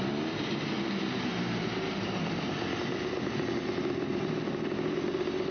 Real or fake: real